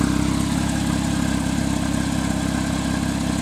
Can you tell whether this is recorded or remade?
recorded